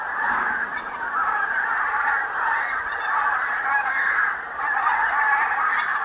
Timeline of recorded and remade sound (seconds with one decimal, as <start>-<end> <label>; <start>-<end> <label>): 0.0-0.7 recorded; 0.7-4.3 remade; 4.3-6.0 recorded